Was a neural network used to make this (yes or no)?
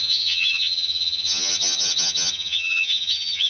yes